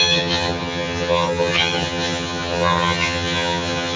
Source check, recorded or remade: remade